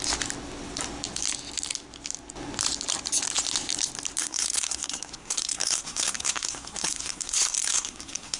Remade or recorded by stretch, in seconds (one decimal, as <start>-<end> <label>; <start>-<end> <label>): 0.0-4.2 recorded; 4.2-8.4 remade